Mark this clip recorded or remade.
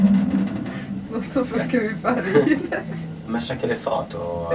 recorded